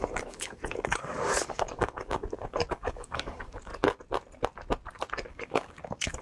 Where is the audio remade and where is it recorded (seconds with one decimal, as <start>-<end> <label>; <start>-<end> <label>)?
0.0-3.7 remade; 3.7-5.3 recorded; 5.3-6.2 remade